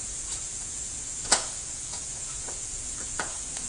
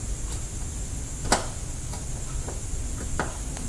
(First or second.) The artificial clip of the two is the first